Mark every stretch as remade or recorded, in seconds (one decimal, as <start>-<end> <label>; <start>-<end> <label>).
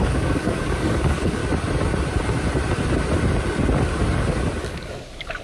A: 0.0-1.4 remade; 1.4-4.6 recorded; 4.6-5.4 remade